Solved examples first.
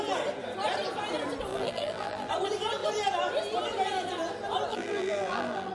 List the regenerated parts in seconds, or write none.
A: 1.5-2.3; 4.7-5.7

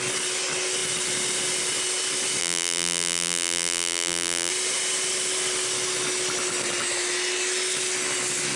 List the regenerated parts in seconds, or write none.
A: 2.4-4.5